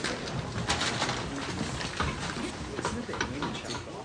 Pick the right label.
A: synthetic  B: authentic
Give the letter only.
B